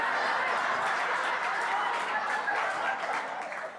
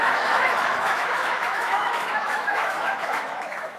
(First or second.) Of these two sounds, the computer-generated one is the second